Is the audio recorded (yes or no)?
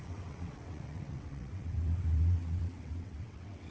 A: no